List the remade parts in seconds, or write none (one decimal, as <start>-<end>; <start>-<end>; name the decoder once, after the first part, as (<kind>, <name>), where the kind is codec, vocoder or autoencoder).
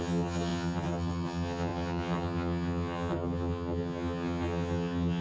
0.0-5.2 (vocoder, HiFi-GAN)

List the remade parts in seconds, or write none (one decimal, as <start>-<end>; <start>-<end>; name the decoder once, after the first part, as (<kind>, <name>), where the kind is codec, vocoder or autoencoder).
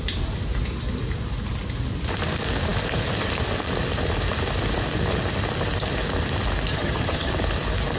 6.7-7.3 (vocoder, HiFi-GAN)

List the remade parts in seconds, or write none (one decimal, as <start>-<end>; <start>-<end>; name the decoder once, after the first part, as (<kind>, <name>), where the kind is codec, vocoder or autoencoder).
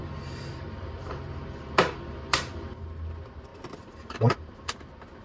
0.0-2.8 (vocoder, BigVGAN v2); 3.5-4.8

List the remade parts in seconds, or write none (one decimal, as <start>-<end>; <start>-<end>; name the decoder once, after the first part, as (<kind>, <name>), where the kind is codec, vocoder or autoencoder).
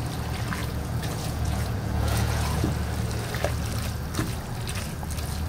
0.6-2.7 (vocoder, Vocos)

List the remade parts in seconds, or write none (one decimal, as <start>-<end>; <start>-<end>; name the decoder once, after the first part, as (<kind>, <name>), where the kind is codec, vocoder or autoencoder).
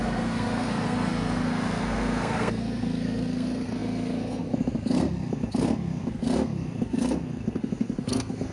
0.0-8.5 (codec, SNAC)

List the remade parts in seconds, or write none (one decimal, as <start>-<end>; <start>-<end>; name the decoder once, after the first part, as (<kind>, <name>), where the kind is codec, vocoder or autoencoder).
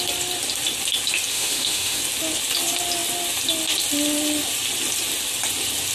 1.3-2.0 (autoencoder, DAC-VAE)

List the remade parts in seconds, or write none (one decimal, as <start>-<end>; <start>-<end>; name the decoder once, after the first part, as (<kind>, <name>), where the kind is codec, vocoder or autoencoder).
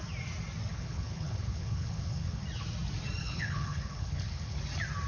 0.7-2.4 (codec, HILCodec); 3.2-4.6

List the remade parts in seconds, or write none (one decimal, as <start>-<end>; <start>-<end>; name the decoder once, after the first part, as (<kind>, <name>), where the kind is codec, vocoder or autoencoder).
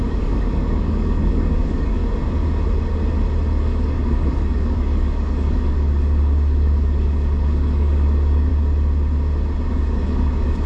0.0-2.0 (codec, DAC); 3.6-8.5; 9.7-10.7